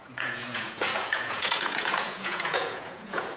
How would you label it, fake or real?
fake